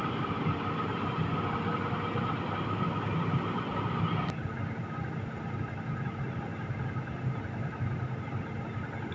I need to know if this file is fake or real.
real